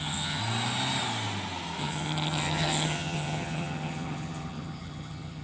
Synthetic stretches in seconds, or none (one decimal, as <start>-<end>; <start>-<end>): 0.0-0.4; 1.8-5.4